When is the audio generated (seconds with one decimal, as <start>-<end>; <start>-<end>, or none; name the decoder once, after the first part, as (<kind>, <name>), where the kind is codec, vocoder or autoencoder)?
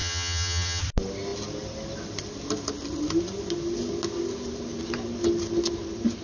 0.0-0.8 (vocoder, HiFi-GAN)